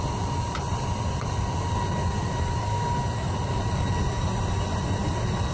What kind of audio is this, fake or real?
real